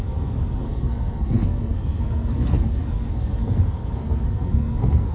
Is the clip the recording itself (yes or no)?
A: no